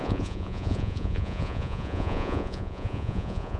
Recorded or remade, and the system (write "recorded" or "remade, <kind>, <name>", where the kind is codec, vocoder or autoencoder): remade, vocoder, Vocos